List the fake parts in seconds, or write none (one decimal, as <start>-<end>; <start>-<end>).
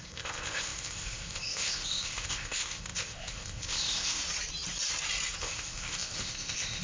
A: 0.0-4.2; 5.4-6.8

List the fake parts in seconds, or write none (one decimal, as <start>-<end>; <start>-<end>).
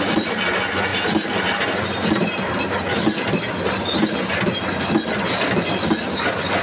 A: none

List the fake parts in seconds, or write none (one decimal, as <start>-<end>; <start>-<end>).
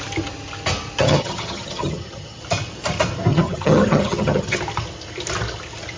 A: 1.0-2.4; 3.3-4.6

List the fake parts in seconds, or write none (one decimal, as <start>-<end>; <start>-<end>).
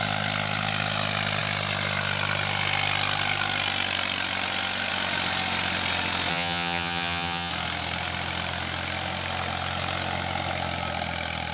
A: 6.3-7.5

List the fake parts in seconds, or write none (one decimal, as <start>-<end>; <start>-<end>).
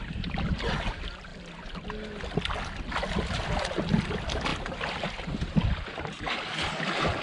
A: none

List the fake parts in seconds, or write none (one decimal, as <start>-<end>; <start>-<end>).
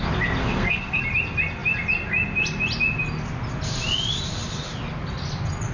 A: 0.4-1.0